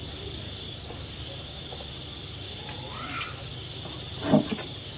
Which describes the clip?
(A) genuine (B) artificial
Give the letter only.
A